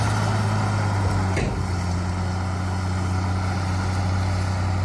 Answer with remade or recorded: recorded